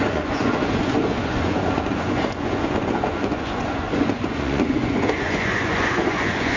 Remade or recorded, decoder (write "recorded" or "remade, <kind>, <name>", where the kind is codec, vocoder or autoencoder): remade, vocoder, Vocos